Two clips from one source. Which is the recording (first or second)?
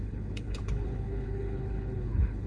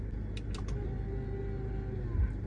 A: second